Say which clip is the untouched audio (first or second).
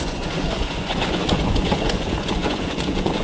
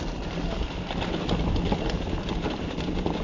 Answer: second